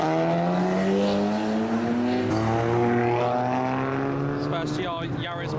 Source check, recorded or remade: recorded